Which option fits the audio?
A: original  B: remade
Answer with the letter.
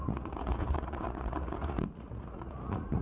B